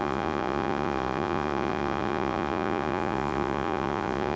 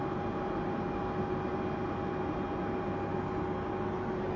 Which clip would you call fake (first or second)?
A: first